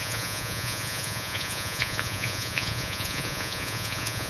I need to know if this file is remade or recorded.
remade